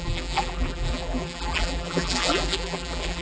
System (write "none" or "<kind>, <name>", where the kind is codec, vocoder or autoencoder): vocoder, BigVGAN v2